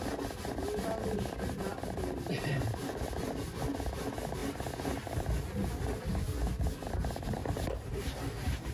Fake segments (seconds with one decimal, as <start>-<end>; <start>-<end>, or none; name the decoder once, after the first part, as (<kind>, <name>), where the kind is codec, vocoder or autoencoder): 7.4-8.7 (vocoder, BigVGAN v2)